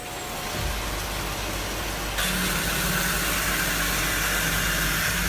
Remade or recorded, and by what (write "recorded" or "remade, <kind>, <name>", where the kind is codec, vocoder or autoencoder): recorded